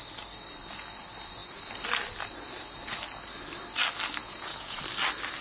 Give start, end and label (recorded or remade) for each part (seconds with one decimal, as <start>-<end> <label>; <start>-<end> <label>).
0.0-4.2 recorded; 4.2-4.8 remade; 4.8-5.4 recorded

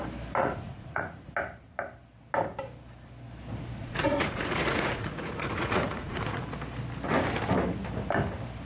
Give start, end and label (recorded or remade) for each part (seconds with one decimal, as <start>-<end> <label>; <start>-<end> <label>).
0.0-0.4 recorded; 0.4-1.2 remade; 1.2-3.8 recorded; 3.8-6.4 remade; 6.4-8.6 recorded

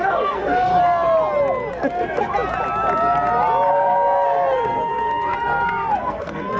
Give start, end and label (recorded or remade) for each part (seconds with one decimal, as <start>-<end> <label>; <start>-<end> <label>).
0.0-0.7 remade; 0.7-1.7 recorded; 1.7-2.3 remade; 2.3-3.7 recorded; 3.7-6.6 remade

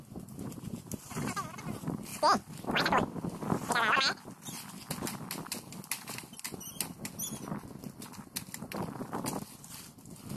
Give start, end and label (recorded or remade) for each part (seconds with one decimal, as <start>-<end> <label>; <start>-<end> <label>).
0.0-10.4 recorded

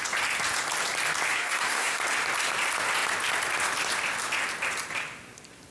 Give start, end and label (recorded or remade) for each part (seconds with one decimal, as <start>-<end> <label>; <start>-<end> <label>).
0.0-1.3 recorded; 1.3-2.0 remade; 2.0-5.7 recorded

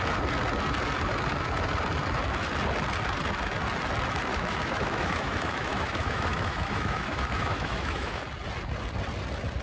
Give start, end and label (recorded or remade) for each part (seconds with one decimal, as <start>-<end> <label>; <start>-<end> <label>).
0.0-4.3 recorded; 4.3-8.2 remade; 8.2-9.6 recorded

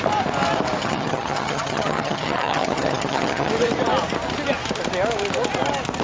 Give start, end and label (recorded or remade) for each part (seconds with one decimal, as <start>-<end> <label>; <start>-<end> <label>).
0.0-0.8 recorded; 0.8-3.5 remade; 3.5-6.0 recorded

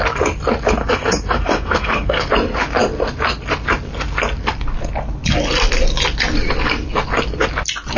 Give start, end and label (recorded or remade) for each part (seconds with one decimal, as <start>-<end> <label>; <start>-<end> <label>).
0.0-0.8 recorded; 0.8-2.3 remade; 2.3-8.0 recorded